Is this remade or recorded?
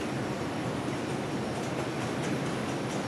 recorded